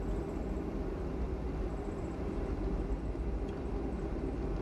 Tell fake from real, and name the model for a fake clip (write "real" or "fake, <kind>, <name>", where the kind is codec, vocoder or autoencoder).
real